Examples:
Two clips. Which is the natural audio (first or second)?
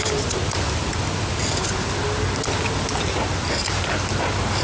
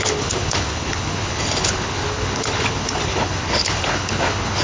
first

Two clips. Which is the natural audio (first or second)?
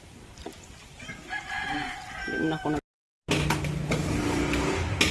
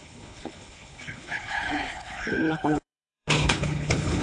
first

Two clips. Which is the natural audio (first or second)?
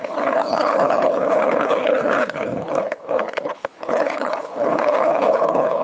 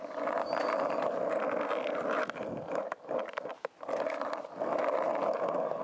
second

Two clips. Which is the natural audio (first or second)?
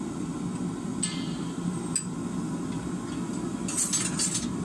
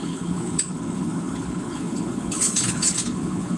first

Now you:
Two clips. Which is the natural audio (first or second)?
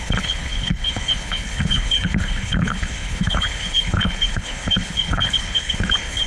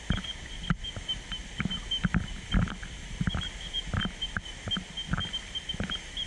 second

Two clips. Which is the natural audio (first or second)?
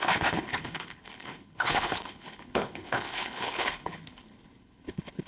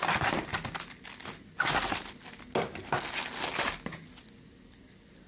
second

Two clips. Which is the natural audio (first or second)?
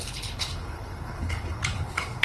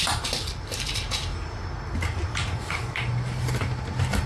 second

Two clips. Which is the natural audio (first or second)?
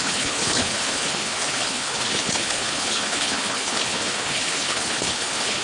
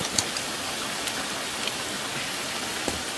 second